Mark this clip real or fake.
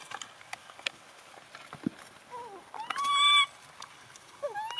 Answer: real